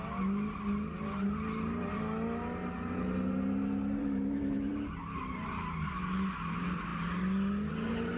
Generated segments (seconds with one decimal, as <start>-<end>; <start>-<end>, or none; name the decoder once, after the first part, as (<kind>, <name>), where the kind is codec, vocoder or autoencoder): 4.0-4.7 (autoencoder, DAC-VAE)